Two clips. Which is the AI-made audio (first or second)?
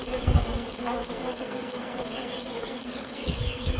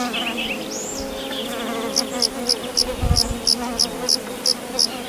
first